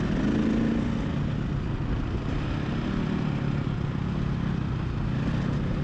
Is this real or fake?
real